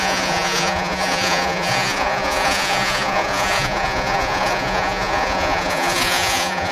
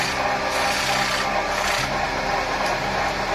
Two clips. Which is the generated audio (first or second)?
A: first